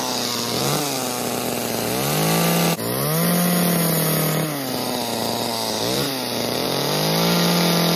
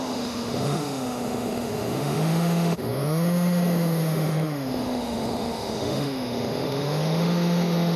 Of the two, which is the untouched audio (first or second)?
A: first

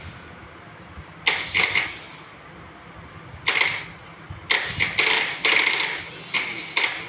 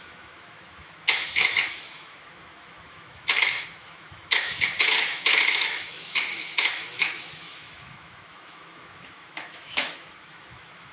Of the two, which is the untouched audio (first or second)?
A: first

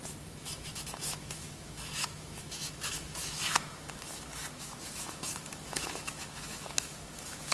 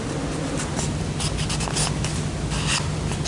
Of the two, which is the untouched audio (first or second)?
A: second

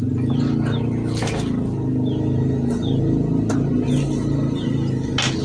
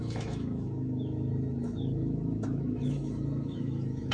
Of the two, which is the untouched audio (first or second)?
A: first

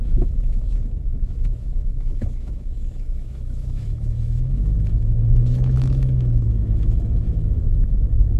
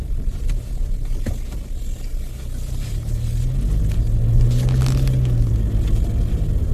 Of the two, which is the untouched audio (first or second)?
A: second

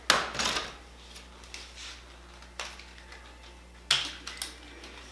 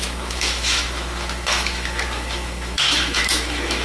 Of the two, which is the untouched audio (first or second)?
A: first